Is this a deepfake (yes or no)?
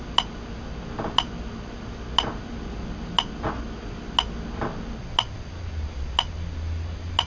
no